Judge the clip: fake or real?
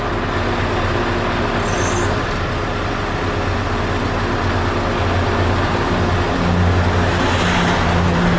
real